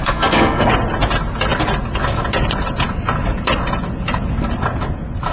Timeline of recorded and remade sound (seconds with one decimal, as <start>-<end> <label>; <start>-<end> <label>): 0.0-0.7 remade; 0.7-5.3 recorded